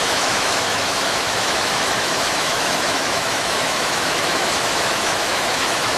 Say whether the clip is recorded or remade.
remade